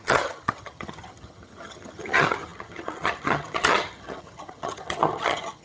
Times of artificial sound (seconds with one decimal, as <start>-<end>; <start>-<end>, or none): 0.0-5.6